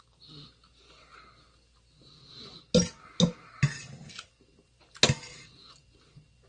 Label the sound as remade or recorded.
recorded